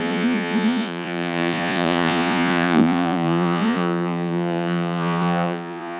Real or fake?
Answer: fake